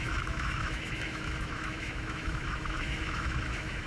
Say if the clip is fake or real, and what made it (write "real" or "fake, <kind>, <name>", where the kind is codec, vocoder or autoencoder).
fake, autoencoder, DAC-VAE